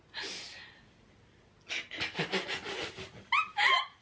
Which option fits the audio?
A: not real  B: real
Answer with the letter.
B